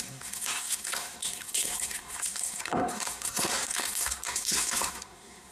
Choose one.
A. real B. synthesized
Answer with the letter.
B